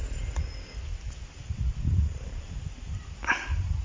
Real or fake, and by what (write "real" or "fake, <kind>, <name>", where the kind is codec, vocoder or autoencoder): real